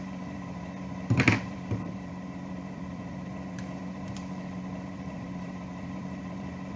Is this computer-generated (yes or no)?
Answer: yes